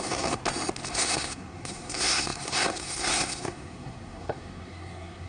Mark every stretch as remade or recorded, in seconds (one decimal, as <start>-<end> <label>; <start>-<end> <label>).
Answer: 0.0-0.4 remade; 0.4-0.9 recorded; 0.9-5.3 remade